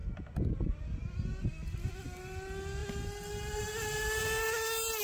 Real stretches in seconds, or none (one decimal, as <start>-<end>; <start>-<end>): 0.0-5.0